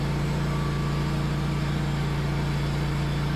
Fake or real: real